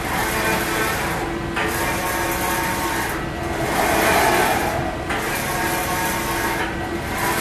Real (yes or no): yes